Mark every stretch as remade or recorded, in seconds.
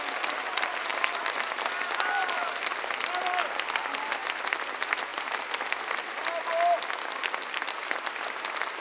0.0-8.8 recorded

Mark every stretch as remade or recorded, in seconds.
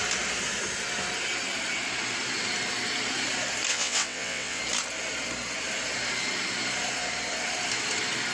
0.0-3.7 recorded; 3.7-4.6 remade; 4.6-8.3 recorded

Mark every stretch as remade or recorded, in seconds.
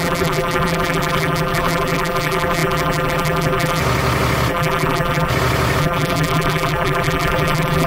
0.0-3.8 remade; 3.8-4.5 recorded; 4.5-5.3 remade; 5.3-5.8 recorded; 5.8-7.9 remade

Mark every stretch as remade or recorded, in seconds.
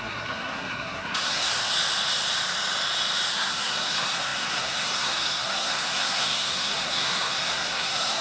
0.0-1.5 remade; 1.5-3.3 recorded; 3.3-8.2 remade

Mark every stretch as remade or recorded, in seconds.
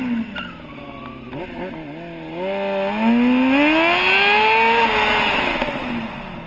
0.0-6.5 recorded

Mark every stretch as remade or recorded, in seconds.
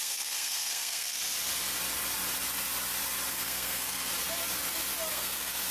0.0-1.2 remade; 1.2-3.3 recorded; 3.3-4.1 remade; 4.1-5.1 recorded; 5.1-5.7 remade